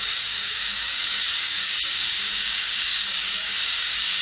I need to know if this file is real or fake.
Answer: fake